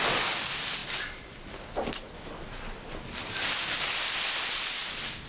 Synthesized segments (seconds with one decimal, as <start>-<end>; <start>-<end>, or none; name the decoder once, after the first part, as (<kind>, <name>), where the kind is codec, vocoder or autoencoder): none